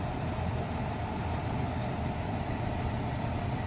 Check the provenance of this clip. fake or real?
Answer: real